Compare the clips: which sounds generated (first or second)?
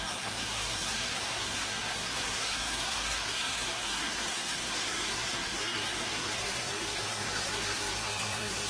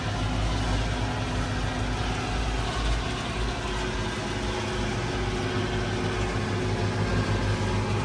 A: first